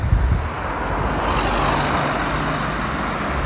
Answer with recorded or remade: recorded